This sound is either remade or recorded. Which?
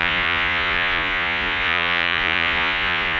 remade